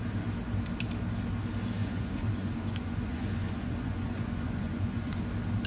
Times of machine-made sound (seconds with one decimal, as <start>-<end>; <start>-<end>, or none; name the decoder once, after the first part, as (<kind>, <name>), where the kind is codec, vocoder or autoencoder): 1.8-5.2 (vocoder, Vocos)